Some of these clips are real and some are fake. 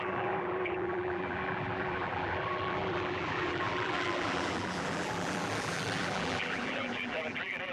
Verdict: fake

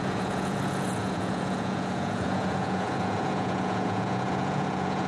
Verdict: fake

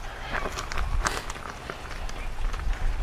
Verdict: real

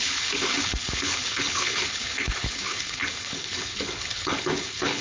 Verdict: fake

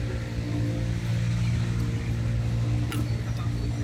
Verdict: real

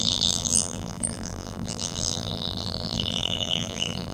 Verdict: fake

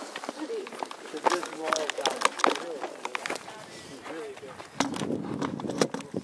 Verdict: real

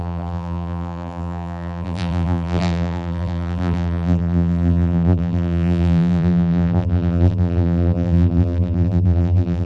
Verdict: fake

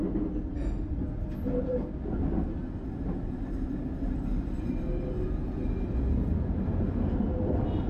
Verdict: real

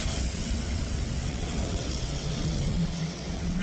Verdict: fake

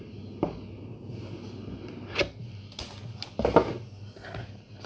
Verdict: real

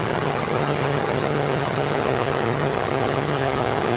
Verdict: fake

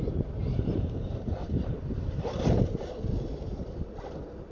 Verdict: fake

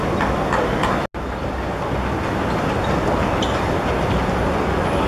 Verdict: real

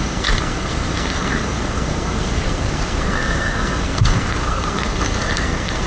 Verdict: fake